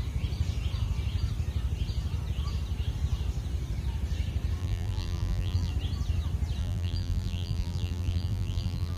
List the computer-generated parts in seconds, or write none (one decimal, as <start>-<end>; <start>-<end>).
4.6-5.7; 6.6-9.0